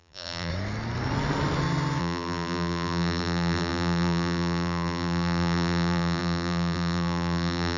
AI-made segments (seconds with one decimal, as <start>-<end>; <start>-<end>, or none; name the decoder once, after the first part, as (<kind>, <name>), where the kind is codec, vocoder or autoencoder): 0.0-0.5 (vocoder, BigVGAN v2); 2.0-7.8